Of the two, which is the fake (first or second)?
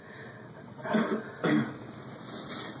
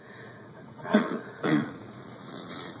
second